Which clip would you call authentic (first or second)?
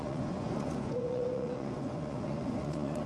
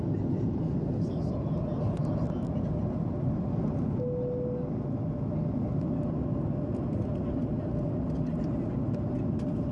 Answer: second